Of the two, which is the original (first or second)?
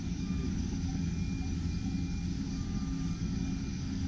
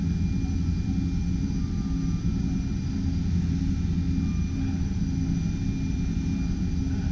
second